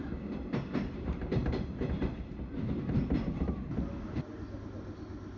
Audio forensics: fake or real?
real